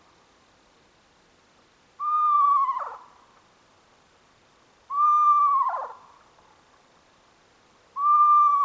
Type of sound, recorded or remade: recorded